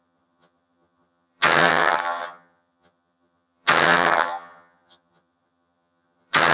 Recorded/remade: remade